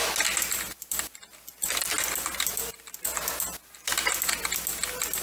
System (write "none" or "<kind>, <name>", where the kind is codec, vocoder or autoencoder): none